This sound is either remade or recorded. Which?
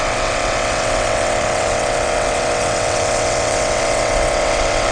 remade